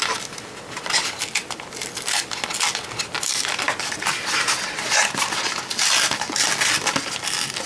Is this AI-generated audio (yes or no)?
no